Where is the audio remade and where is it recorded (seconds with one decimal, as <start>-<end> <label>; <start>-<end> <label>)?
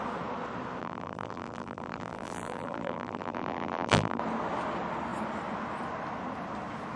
0.0-0.8 recorded; 0.8-4.2 remade; 4.2-7.0 recorded